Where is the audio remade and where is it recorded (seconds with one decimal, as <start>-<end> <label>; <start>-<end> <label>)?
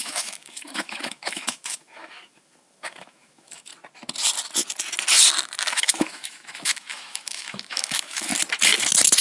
0.0-3.7 remade; 3.7-5.7 recorded; 5.7-8.3 remade; 8.3-9.2 recorded